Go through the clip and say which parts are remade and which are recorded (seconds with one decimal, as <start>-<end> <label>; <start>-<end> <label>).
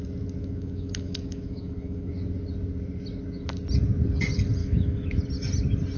0.0-0.4 recorded; 0.4-2.1 remade; 2.1-4.6 recorded; 4.6-5.2 remade; 5.2-6.0 recorded